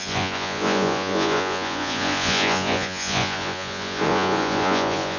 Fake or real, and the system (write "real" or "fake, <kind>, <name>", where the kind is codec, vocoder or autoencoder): fake, vocoder, Vocos